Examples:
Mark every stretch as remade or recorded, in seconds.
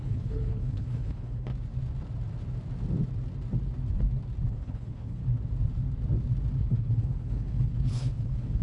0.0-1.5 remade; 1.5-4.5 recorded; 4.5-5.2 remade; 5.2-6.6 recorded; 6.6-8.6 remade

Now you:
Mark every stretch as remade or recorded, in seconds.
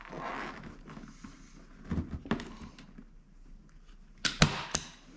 0.0-5.2 recorded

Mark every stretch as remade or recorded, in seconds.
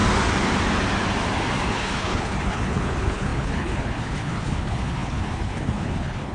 0.0-1.7 recorded; 1.7-6.3 remade